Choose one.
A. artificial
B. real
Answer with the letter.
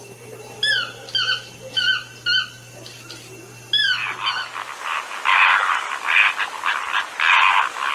B